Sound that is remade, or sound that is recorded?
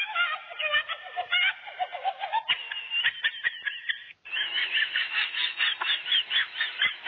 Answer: recorded